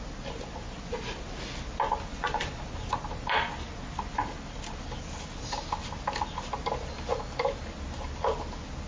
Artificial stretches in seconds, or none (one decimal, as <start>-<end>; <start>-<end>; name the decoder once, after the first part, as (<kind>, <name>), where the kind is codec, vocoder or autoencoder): 2.1-2.6 (vocoder, Vocos)